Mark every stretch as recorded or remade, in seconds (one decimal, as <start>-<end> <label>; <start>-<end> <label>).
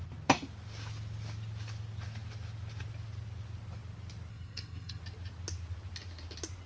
0.0-4.3 recorded; 4.3-5.0 remade; 5.0-6.7 recorded